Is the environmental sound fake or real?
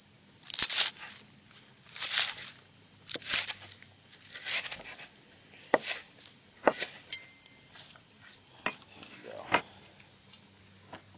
real